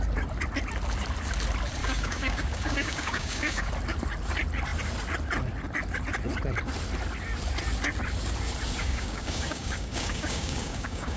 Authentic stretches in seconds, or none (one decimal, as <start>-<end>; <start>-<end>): 0.0-1.8; 3.7-8.8